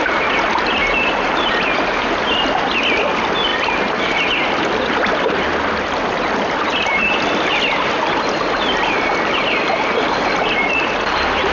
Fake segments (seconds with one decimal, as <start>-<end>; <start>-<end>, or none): none